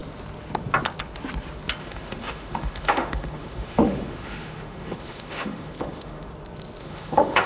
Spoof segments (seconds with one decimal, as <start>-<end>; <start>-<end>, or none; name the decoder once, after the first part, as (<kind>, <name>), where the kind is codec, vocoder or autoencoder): 1.8-6.3 (autoencoder, DAC-VAE); 6.8-7.5

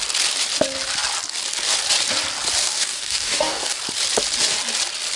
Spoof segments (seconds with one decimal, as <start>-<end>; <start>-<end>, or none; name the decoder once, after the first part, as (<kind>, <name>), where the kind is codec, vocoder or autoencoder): 2.6-3.8 (codec, DAC)